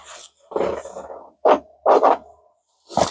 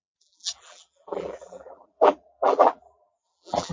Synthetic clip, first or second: second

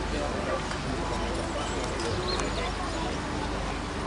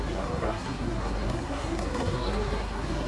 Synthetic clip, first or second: second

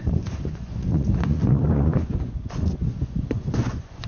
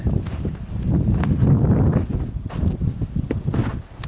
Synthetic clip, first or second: first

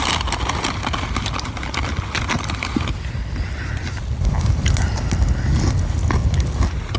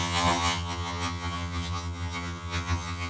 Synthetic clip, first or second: second